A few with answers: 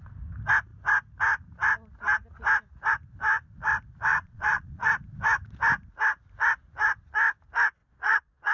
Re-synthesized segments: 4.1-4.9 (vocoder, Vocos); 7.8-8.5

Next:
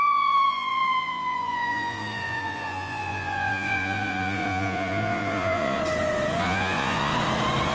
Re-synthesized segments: 0.0-5.8 (vocoder, Vocos); 6.4-7.1

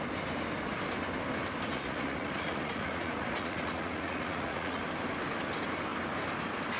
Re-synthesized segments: 1.7-4.8 (vocoder, Vocos)